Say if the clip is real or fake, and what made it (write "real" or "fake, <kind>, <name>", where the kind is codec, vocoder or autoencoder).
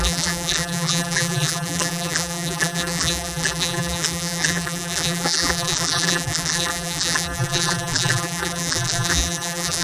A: fake, vocoder, BigVGAN v2